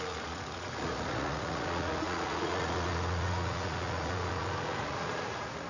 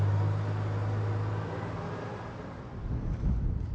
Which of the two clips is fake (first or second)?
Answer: first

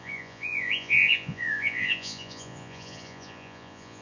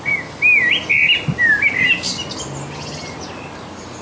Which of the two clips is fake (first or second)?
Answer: first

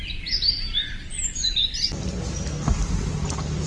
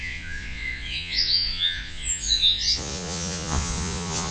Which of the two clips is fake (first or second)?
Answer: second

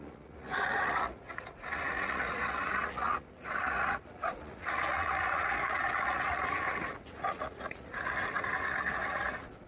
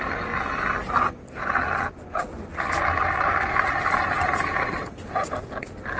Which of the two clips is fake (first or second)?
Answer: first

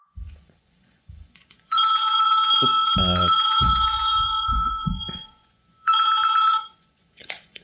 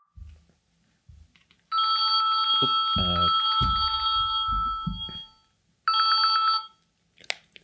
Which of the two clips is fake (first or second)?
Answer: first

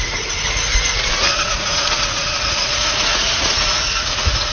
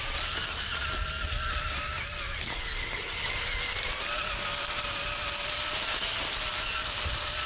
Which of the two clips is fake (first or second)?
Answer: first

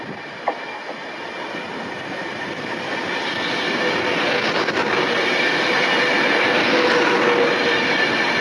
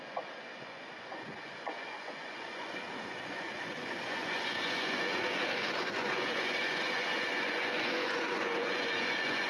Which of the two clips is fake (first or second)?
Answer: second